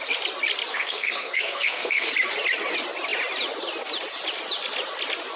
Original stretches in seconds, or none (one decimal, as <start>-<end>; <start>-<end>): 0.0-0.7; 2.1-5.4